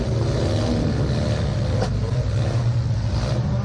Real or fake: real